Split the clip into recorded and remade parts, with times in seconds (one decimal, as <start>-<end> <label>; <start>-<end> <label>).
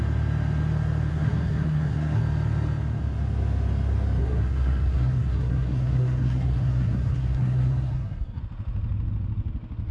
0.0-1.1 recorded; 1.1-2.2 remade; 2.2-4.2 recorded; 4.2-8.4 remade; 8.4-9.9 recorded